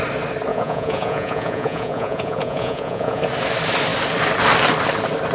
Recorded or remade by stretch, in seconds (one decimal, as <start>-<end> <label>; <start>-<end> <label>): 0.0-0.5 recorded; 0.5-3.2 remade; 3.2-5.3 recorded